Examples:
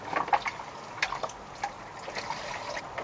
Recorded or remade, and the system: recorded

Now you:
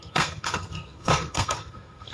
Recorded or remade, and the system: remade, codec, SNAC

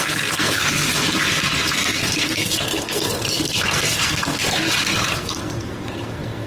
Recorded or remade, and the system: remade, codec, SNAC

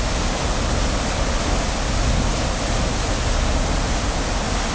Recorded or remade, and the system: recorded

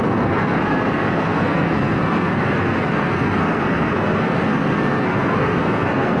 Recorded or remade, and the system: remade, codec, SNAC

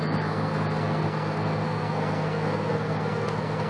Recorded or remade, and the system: remade, codec, SNAC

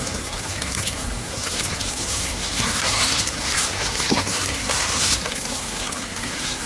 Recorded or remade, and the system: remade, codec, SNAC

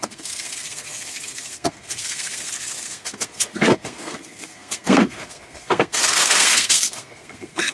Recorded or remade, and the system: remade, codec, SNAC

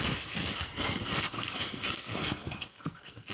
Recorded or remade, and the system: remade, codec, SNAC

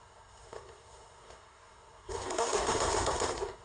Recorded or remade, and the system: remade, codec, SNAC